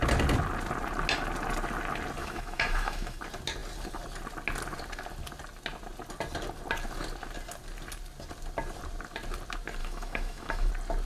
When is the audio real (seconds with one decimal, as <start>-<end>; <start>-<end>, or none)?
0.0-2.2; 3.2-9.8; 10.7-11.1